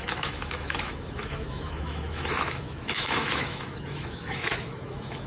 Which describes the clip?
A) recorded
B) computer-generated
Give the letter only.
B